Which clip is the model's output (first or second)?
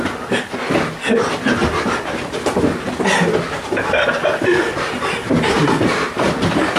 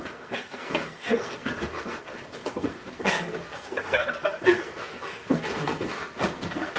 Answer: second